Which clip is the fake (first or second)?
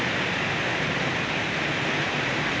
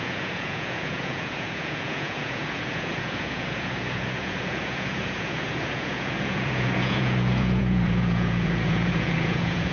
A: second